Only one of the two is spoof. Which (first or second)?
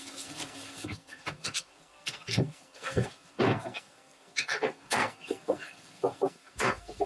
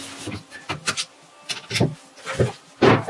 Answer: first